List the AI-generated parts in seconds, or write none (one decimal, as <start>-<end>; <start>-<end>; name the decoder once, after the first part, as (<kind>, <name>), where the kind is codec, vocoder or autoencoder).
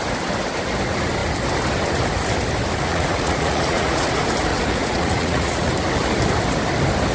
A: 2.9-4.1 (vocoder, Vocos); 4.5-5.7